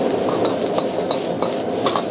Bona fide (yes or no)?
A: yes